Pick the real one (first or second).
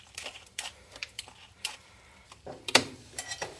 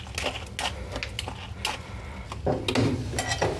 second